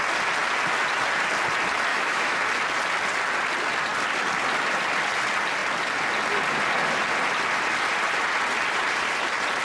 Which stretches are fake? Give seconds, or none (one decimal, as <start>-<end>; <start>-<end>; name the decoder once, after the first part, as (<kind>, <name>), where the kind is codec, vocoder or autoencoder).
1.9-2.4 (autoencoder, DAC-VAE)